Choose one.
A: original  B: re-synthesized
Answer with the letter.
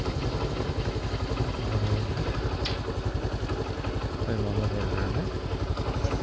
A